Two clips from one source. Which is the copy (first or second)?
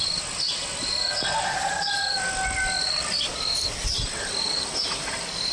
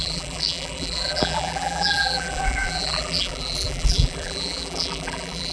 second